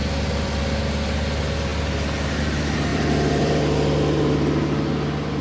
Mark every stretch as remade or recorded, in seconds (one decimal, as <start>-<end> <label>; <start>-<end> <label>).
0.0-0.6 remade; 0.6-2.9 recorded; 2.9-3.6 remade; 3.6-5.4 recorded